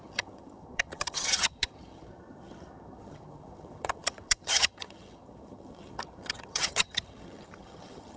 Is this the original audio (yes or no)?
no